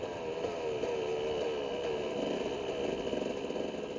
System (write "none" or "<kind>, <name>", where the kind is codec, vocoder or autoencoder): none